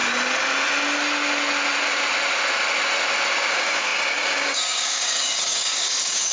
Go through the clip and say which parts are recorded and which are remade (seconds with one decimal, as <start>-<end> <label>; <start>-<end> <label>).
0.0-3.5 recorded; 3.5-6.3 remade